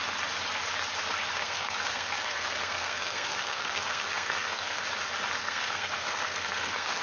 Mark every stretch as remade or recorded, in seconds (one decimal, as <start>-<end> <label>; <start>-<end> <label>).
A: 0.0-1.4 recorded; 1.4-4.8 remade; 4.8-5.4 recorded; 5.4-7.0 remade